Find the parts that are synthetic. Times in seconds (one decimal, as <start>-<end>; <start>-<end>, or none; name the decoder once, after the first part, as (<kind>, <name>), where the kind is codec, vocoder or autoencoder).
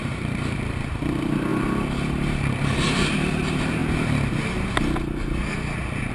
0.0-3.8 (vocoder, BigVGAN v2)